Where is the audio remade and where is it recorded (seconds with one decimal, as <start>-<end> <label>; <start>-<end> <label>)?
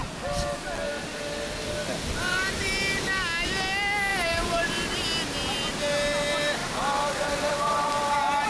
0.0-4.1 recorded; 4.1-4.9 remade; 4.9-8.5 recorded